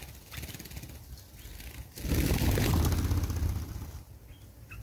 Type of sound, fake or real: real